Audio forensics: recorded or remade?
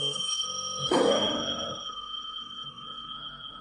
remade